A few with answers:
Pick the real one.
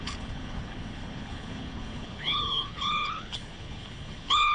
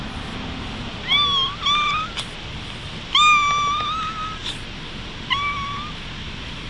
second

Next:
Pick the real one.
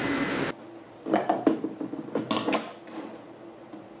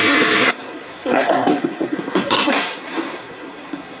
first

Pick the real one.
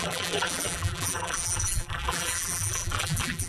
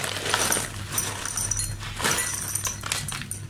second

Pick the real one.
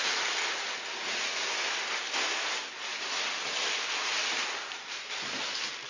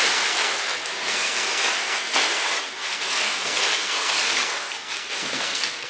first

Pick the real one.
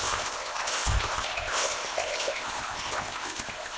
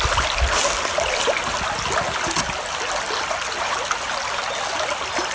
second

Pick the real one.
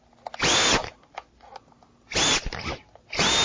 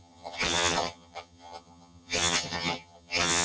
first